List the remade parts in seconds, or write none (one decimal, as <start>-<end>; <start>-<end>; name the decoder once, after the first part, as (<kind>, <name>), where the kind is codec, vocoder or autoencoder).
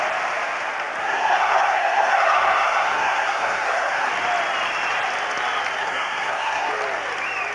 1.0-4.1 (codec, SNAC); 5.8-6.7